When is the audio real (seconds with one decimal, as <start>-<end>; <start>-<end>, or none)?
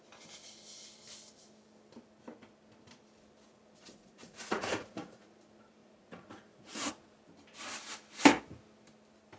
0.0-3.8; 5.3-5.8; 6.9-9.4